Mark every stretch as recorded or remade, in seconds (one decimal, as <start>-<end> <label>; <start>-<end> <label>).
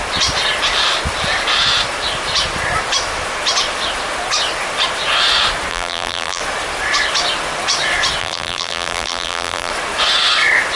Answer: 0.0-5.7 recorded; 5.7-6.4 remade; 6.4-8.2 recorded; 8.2-9.7 remade; 9.7-10.8 recorded